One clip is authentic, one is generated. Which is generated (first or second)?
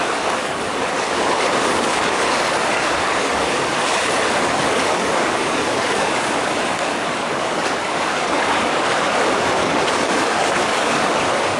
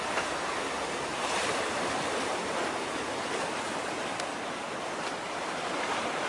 first